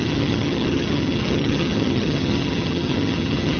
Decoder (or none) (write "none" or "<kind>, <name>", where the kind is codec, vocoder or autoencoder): vocoder, HiFi-GAN